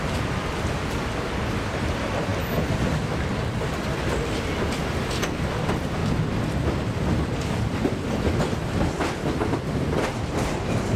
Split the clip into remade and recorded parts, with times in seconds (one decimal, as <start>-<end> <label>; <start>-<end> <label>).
0.0-2.3 remade; 2.3-2.8 recorded; 2.8-6.0 remade; 6.0-6.9 recorded; 6.9-11.0 remade

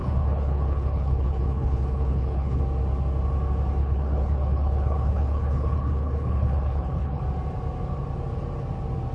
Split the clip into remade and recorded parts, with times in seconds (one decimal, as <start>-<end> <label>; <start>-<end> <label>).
0.0-2.6 remade; 2.6-3.8 recorded; 3.8-7.2 remade; 7.2-9.1 recorded

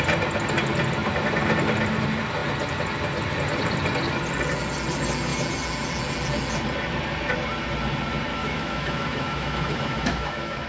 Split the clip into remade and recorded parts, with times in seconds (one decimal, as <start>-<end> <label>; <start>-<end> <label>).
0.0-8.4 recorded; 8.4-10.7 remade

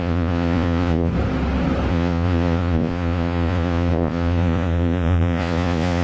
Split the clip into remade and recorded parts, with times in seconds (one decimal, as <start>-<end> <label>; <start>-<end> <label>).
0.0-1.1 remade; 1.1-1.9 recorded; 1.9-6.0 remade

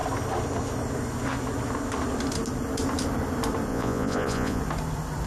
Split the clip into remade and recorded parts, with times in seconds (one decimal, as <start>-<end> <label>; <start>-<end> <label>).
0.0-3.7 recorded; 3.7-4.6 remade; 4.6-5.3 recorded

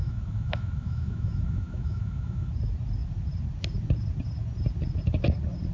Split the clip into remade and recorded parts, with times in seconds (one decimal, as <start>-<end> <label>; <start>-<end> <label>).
0.0-2.5 remade; 2.5-5.7 recorded

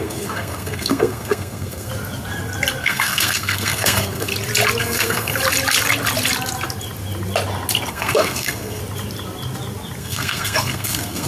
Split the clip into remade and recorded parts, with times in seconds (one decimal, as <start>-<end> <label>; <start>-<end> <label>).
0.0-1.9 remade; 1.9-2.8 recorded; 2.8-4.3 remade; 4.3-4.8 recorded; 4.8-5.3 remade; 5.3-7.9 recorded; 7.9-8.8 remade; 8.8-10.0 recorded; 10.0-11.3 remade

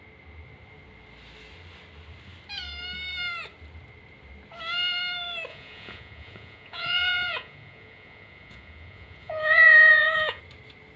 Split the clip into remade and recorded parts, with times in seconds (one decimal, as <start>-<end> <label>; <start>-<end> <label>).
0.0-5.5 recorded; 5.5-10.4 remade; 10.4-11.0 recorded